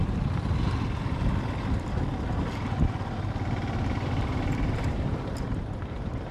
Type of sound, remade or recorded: recorded